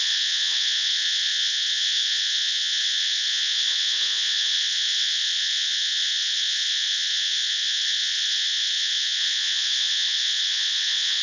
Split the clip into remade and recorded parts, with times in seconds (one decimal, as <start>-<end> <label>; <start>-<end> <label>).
0.0-11.2 remade